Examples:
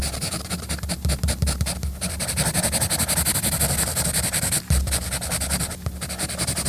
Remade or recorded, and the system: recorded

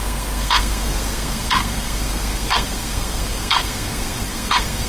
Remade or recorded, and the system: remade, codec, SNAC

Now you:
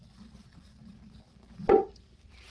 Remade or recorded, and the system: recorded